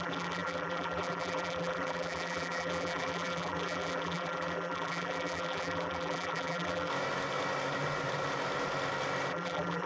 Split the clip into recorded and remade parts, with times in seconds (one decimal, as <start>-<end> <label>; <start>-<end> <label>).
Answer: 0.0-6.9 remade; 6.9-9.3 recorded; 9.3-9.9 remade